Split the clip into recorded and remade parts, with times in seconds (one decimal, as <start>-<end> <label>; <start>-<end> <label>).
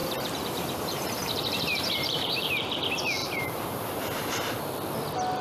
0.0-2.8 remade; 2.8-3.2 recorded; 3.2-4.6 remade; 4.6-5.4 recorded